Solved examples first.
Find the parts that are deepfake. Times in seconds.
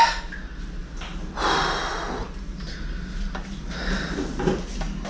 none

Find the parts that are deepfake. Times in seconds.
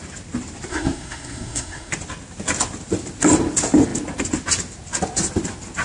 0.7-1.9 (codec, SNAC)